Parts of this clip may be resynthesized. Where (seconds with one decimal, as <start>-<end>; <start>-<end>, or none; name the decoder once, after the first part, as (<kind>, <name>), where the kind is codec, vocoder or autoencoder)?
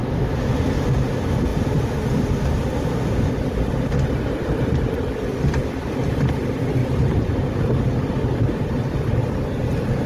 6.8-7.7 (vocoder, BigVGAN v2)